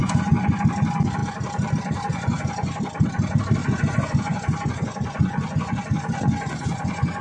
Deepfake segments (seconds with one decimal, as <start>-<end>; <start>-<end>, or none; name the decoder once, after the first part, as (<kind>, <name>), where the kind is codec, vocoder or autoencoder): 0.0-0.5 (vocoder, Vocos); 2.1-2.8; 3.6-7.2